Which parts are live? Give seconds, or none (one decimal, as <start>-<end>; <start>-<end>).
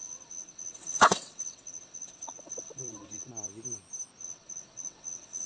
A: 3.3-4.2